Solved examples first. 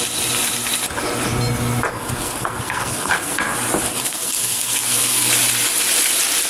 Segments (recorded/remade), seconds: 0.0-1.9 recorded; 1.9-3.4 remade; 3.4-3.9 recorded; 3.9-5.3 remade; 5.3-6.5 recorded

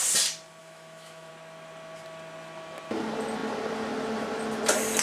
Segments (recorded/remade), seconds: 0.0-0.6 recorded; 0.6-1.3 remade; 1.3-5.0 recorded

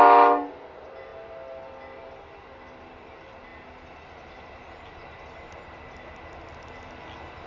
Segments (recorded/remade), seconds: 0.0-7.5 recorded

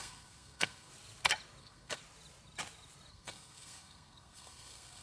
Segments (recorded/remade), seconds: 0.0-0.9 remade; 0.9-1.6 recorded; 1.6-2.0 remade; 2.0-3.1 recorded; 3.1-5.0 remade

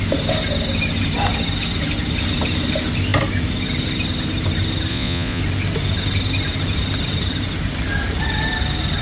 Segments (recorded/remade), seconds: 0.0-4.9 recorded; 4.9-5.4 remade; 5.4-9.0 recorded

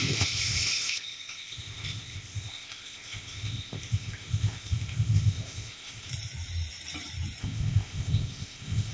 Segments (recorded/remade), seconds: 0.0-6.1 remade; 6.1-7.4 recorded; 7.4-8.9 remade